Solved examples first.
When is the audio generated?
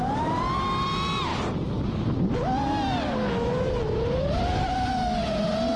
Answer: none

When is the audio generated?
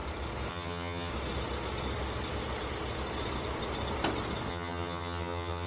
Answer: 0.5-1.1; 4.5-5.7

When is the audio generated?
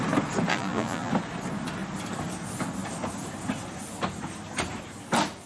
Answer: 0.5-1.1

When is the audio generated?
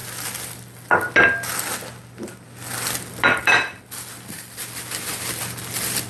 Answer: none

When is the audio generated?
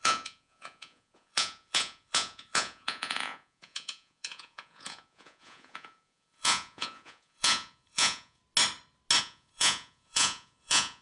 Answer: 0.0-8.4; 9.2-11.0